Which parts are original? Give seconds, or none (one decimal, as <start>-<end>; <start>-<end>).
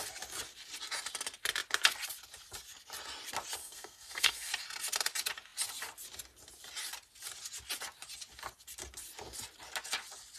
0.0-3.6; 4.5-10.4